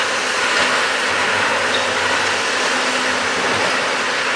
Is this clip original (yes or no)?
yes